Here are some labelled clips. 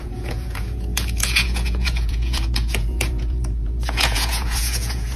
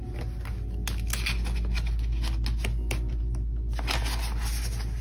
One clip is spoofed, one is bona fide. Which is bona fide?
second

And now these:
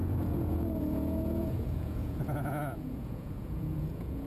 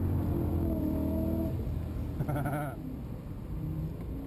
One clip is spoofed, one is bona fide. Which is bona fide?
second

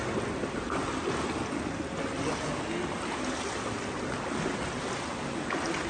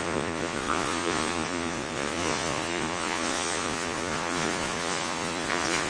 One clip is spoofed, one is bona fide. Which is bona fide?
first